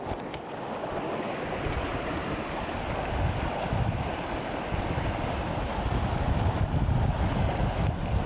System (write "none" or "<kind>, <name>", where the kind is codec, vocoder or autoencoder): none